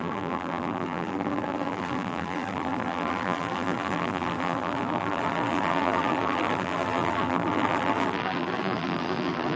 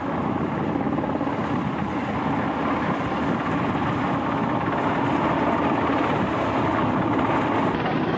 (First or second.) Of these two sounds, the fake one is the first